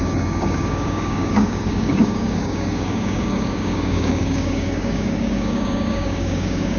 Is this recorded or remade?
remade